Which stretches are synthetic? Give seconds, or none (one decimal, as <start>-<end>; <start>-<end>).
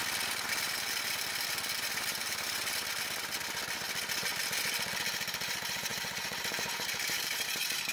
1.8-2.6; 5.3-7.9